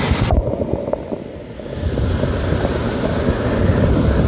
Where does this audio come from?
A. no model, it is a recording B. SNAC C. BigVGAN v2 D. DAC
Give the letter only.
A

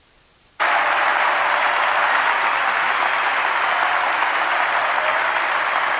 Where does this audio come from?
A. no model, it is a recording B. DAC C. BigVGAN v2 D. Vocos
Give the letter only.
A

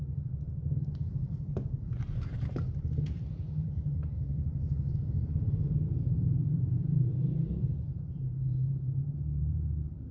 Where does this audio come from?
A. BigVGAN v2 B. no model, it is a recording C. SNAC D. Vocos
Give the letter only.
A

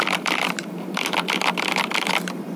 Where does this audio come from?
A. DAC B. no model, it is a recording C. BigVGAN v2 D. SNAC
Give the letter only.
B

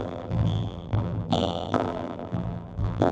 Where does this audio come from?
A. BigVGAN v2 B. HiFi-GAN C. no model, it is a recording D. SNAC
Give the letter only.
A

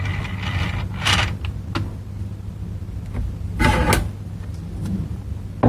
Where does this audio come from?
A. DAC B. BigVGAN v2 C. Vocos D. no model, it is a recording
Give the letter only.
D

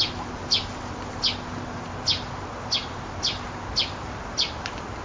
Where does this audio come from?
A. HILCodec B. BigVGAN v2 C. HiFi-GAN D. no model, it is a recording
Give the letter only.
D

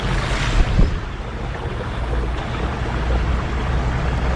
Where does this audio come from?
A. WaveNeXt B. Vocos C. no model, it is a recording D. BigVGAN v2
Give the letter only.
C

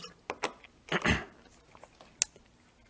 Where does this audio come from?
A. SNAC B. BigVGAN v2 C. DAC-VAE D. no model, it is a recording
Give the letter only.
D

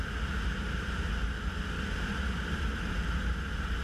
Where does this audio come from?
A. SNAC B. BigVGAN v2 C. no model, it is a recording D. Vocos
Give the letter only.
C